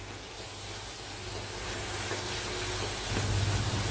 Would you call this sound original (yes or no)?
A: yes